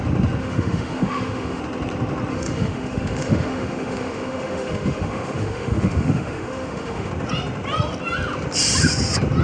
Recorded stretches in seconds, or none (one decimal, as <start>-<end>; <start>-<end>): 0.0-0.4; 1.6-2.3; 7.1-9.4